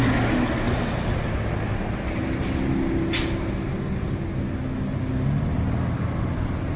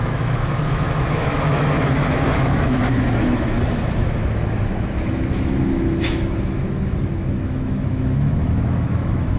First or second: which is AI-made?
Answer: second